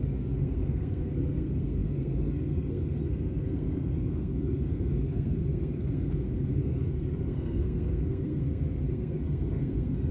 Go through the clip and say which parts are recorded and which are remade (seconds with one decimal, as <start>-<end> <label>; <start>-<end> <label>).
0.0-10.1 remade